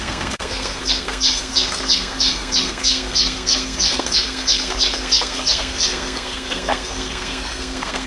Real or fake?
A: fake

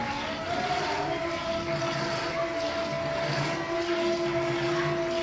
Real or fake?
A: real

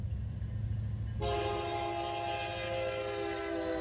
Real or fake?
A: real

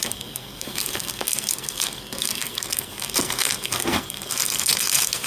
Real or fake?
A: fake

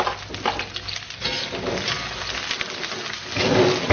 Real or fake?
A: real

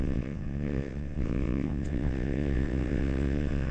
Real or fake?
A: fake